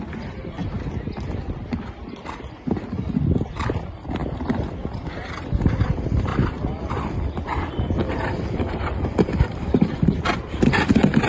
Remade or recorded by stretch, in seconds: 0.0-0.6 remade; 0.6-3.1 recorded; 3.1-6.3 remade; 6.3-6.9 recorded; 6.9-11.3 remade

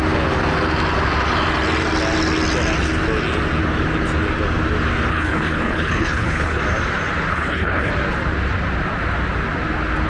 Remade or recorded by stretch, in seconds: 0.0-5.1 recorded; 5.1-6.6 remade; 6.6-7.3 recorded; 7.3-7.9 remade; 7.9-10.1 recorded

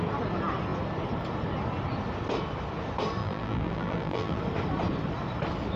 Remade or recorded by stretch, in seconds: 0.0-3.2 recorded; 3.2-4.4 remade; 4.4-5.8 recorded

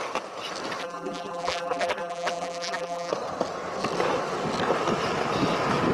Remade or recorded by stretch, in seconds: 0.0-0.8 recorded; 0.8-3.1 remade; 3.1-5.9 recorded

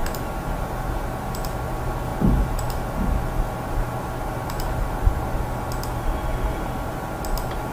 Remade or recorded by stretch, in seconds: 0.0-7.7 recorded